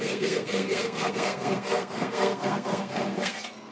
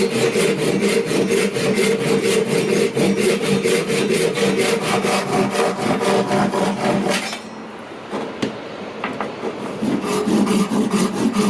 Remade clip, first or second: first